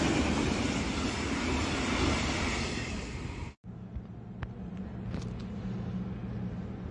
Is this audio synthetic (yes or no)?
no